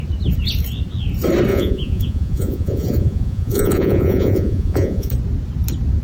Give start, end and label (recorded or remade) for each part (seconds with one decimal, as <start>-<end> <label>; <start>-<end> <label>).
0.0-1.5 recorded; 1.5-5.1 remade; 5.1-6.0 recorded